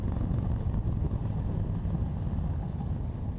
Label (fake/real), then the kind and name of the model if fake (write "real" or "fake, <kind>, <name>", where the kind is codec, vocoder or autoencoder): real